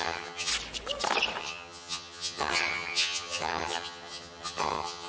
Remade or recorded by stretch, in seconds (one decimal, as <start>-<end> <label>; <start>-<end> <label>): 0.0-0.5 remade; 0.5-1.4 recorded; 1.4-5.1 remade